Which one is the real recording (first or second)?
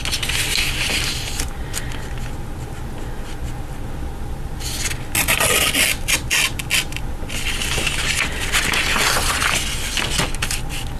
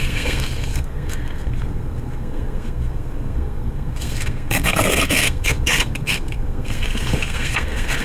first